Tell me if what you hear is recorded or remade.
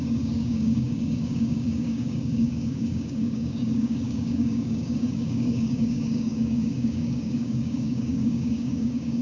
remade